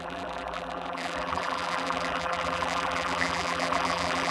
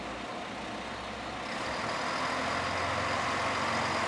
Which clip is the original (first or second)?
second